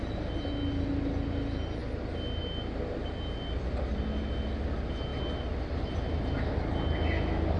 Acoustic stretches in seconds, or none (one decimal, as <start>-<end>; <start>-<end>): 0.0-7.6